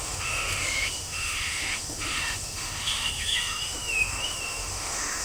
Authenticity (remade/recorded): remade